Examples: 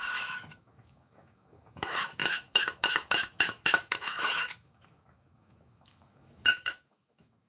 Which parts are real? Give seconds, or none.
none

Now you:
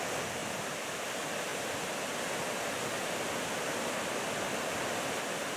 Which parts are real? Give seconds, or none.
0.0-5.6